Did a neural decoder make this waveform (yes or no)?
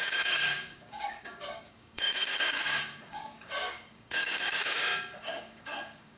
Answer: yes